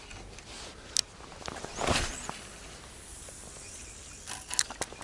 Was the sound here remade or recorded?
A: recorded